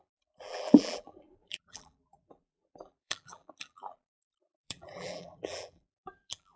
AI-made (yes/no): yes